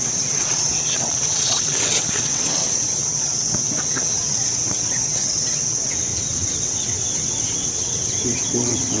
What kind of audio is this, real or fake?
fake